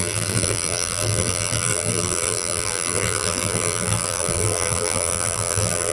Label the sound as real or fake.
fake